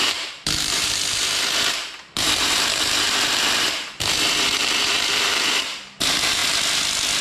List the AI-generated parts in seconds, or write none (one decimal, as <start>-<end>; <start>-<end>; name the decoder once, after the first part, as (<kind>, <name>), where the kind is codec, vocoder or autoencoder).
0.0-6.4 (vocoder, BigVGAN v2)